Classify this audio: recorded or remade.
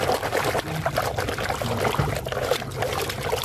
recorded